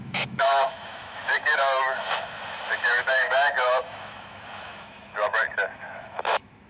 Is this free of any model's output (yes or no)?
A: no